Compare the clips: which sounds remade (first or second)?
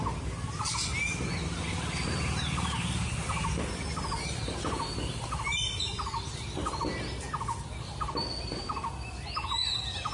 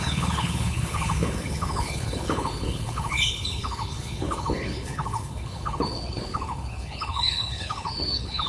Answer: second